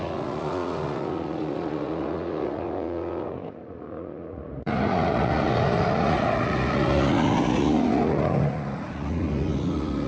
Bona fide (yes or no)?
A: no